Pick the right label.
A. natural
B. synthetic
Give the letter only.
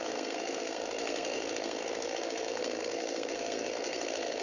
B